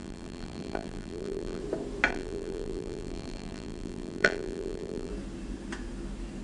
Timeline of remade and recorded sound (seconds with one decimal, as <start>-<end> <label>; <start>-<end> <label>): 0.0-1.6 remade; 1.6-2.1 recorded; 2.1-5.1 remade; 5.1-6.4 recorded